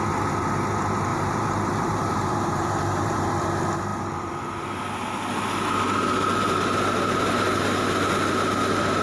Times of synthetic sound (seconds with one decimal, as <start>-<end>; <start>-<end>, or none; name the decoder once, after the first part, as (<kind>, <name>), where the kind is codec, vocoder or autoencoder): 1.1-3.3 (vocoder, BigVGAN v2)